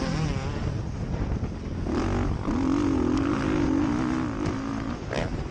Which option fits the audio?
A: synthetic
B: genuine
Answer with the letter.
B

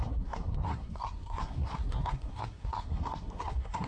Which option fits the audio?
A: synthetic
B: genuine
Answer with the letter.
A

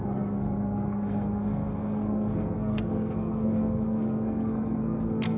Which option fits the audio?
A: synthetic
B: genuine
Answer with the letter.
A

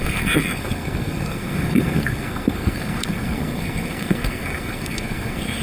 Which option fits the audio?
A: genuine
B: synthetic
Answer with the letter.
B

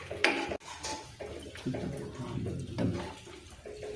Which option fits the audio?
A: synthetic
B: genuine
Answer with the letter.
B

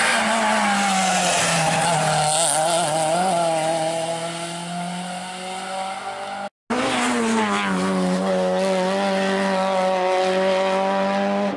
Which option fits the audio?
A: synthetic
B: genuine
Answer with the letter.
B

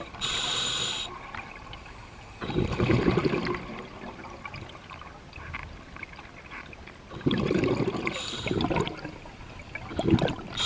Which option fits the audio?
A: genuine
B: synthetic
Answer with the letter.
A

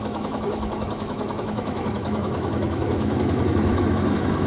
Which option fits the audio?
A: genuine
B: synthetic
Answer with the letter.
B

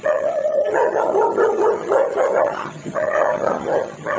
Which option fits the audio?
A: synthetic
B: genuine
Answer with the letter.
A